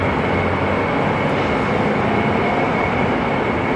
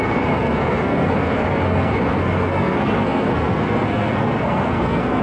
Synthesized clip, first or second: second